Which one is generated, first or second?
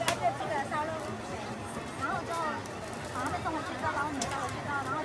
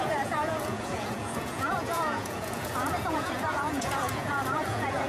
second